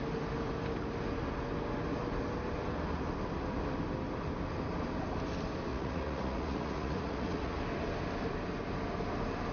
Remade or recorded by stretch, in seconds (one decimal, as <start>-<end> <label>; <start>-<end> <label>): 0.0-5.7 recorded; 5.7-7.6 remade; 7.6-9.5 recorded